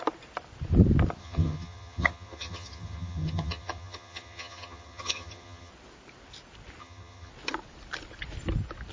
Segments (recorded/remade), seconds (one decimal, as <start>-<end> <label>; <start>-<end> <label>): 0.0-1.2 recorded; 1.2-5.7 remade; 5.7-6.8 recorded; 6.8-7.3 remade; 7.3-8.9 recorded